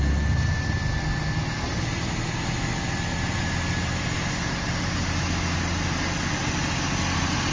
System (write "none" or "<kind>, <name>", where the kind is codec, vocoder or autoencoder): none